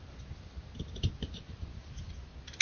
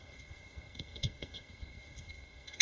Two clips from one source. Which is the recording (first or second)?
first